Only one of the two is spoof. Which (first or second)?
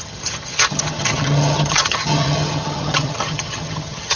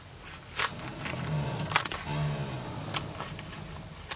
first